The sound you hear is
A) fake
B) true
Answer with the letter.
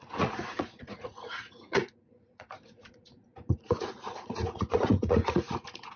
A